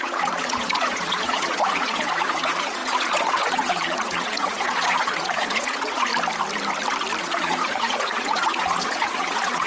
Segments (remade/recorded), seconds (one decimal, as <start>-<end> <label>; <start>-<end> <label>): 0.0-6.1 remade; 6.1-7.2 recorded; 7.2-9.7 remade